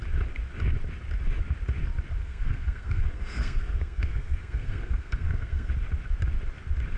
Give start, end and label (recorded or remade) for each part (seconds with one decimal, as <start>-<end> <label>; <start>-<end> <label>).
0.0-2.2 recorded; 2.2-5.7 remade; 5.7-7.0 recorded